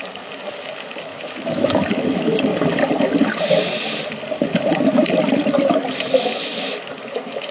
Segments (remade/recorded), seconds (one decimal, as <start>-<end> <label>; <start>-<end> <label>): 0.0-2.5 remade; 2.5-6.2 recorded; 6.2-7.5 remade